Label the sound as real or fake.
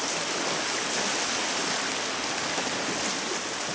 real